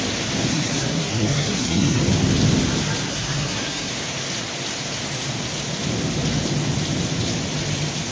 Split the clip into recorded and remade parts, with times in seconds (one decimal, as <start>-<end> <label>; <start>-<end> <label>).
0.0-0.5 recorded; 0.5-2.0 remade; 2.0-3.1 recorded; 3.1-3.9 remade; 3.9-8.1 recorded